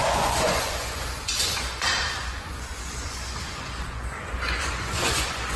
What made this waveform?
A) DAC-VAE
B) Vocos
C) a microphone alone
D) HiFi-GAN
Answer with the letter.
B